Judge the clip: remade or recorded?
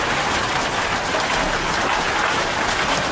recorded